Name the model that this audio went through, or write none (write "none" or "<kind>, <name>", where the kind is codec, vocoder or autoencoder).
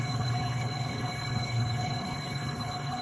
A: codec, HILCodec